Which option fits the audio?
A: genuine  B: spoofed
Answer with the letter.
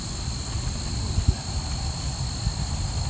A